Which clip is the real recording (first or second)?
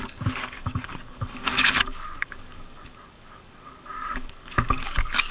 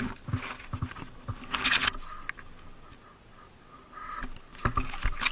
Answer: second